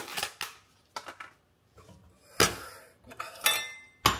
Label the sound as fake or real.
real